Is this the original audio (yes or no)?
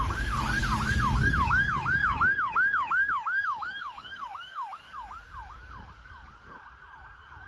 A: no